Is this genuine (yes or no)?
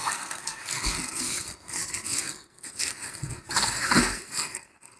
no